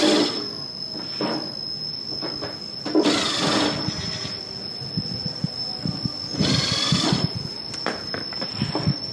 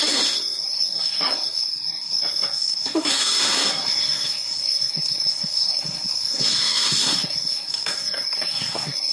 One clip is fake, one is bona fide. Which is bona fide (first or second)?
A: first